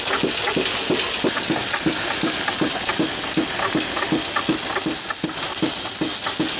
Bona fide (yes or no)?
yes